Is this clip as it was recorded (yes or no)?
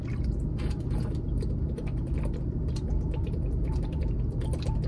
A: no